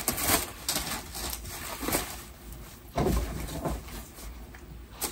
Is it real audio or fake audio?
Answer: real